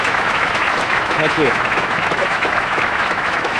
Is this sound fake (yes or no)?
yes